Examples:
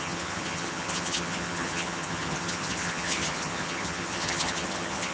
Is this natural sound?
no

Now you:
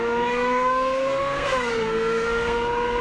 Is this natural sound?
no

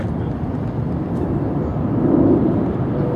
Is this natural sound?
yes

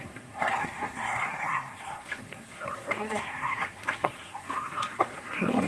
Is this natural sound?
no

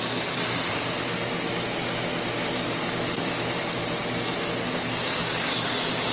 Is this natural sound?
yes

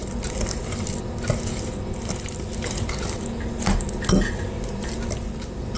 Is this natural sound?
yes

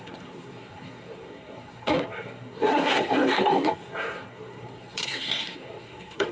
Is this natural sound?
no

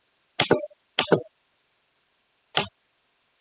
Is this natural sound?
yes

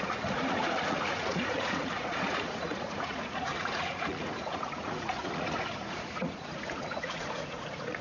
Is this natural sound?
no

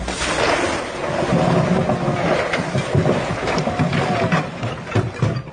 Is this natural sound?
yes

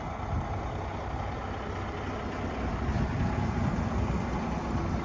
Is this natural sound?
yes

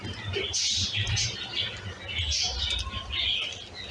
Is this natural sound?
yes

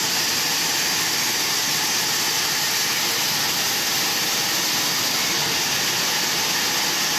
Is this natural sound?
yes